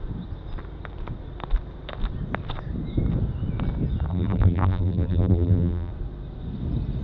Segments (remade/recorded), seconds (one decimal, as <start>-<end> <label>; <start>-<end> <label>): 0.0-4.1 recorded; 4.1-5.9 remade; 5.9-7.0 recorded